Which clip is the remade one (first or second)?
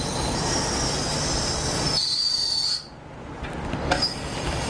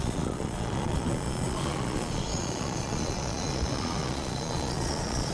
second